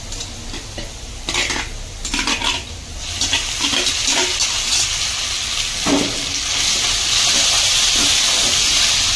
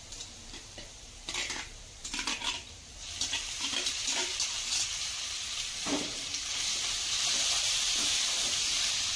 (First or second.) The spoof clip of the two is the second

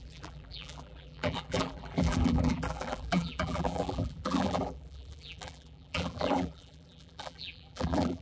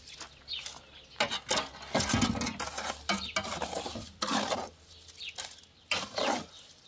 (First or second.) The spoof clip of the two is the first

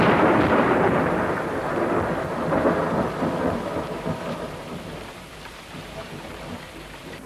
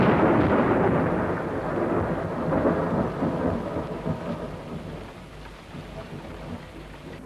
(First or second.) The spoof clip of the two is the first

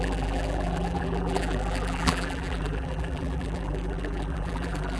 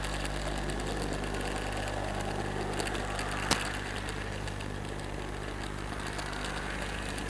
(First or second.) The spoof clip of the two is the first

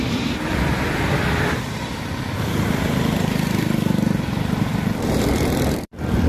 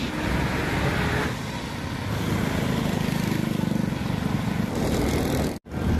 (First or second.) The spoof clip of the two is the first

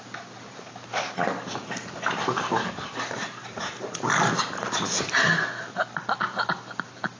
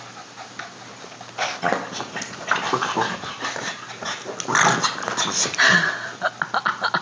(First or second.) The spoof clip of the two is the first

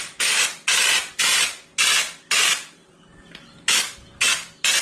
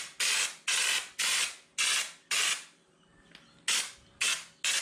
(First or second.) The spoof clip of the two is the first